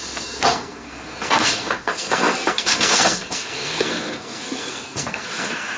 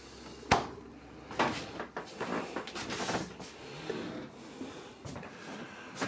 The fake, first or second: first